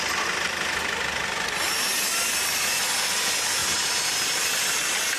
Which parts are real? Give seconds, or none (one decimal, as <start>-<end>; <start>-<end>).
0.0-5.2